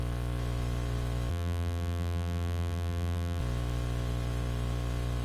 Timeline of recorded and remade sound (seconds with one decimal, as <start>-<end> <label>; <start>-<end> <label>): 0.0-1.3 recorded; 1.3-3.4 remade; 3.4-5.2 recorded